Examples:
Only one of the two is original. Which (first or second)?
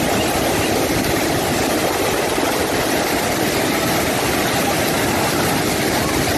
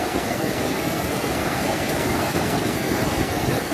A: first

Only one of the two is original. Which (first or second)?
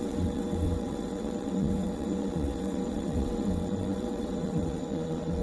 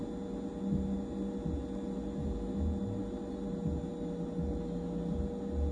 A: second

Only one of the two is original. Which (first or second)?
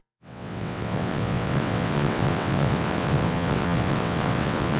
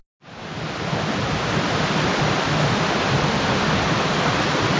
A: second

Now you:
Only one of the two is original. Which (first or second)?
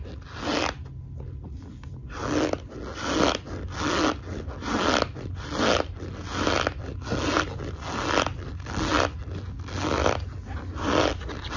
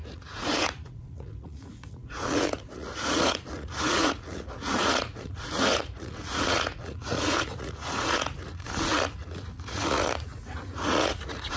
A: first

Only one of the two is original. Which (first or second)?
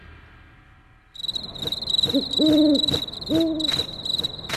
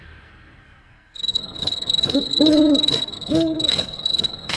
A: first